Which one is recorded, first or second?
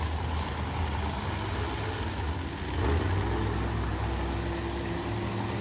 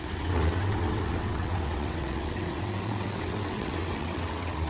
first